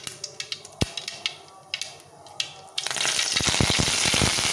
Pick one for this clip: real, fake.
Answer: real